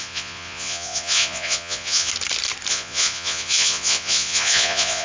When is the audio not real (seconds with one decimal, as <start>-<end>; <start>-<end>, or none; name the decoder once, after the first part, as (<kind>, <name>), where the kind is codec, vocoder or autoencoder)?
0.0-2.1 (vocoder, Vocos); 2.7-5.0